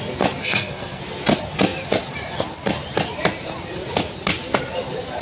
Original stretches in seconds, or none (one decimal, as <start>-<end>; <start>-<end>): 0.0-0.4; 1.0-5.2